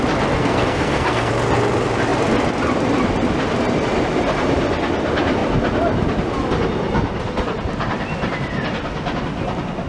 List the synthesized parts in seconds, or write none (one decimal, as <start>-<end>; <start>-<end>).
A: 0.4-1.3